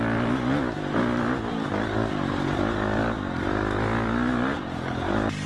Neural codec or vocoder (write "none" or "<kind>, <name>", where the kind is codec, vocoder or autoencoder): none